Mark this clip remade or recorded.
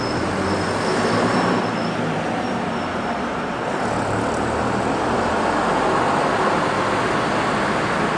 recorded